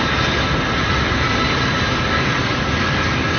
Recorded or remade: recorded